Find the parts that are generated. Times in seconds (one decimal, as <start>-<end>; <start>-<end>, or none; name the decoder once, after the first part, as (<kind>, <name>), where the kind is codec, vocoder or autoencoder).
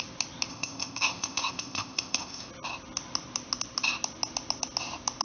0.5-2.5 (codec, ZipCodec)